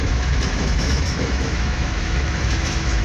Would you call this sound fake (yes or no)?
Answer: yes